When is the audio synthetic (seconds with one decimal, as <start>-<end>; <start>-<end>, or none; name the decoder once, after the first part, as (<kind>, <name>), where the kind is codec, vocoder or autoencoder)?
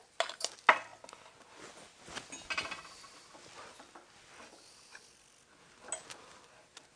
none